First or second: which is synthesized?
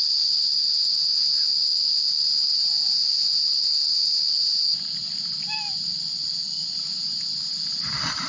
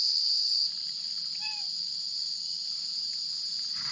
second